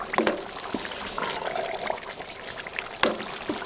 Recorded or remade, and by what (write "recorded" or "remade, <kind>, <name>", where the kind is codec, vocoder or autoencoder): recorded